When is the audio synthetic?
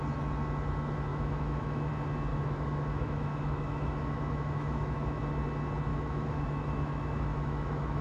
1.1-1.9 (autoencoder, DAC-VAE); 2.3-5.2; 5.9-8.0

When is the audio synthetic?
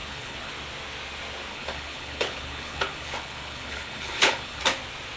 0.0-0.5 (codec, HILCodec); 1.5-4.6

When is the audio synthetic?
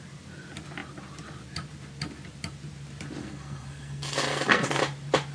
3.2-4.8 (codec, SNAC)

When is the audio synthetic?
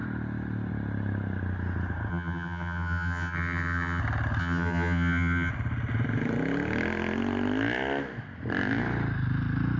2.1-4.0 (vocoder, HiFi-GAN); 4.4-5.5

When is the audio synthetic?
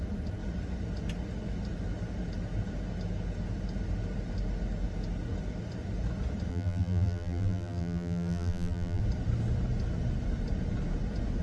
6.5-9.0 (vocoder, BigVGAN v2)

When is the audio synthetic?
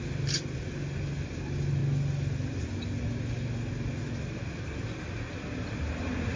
none